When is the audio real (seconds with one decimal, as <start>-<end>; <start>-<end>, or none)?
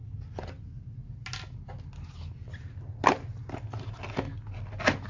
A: 0.0-5.1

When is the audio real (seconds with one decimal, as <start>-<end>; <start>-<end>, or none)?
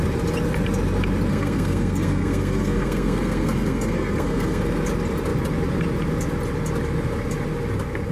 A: 0.0-1.3; 4.6-8.1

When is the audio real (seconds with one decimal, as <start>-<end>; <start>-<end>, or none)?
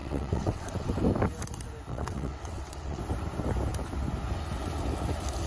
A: 0.9-1.9; 3.0-5.5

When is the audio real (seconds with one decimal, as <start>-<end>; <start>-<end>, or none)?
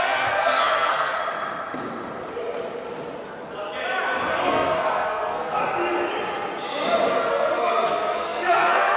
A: 1.2-4.4; 5.6-7.1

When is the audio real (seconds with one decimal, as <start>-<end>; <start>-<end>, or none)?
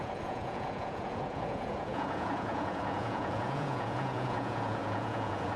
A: none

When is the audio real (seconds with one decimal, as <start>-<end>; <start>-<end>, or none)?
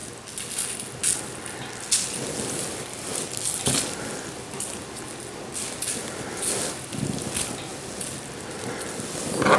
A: 0.0-9.6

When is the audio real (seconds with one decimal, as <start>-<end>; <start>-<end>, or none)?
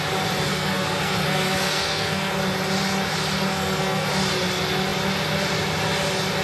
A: 0.0-0.5; 2.3-3.5; 4.1-6.4